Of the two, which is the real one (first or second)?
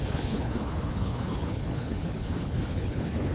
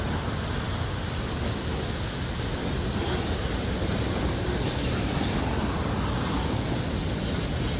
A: second